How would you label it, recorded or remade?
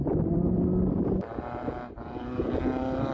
recorded